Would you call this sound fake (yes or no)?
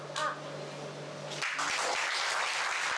no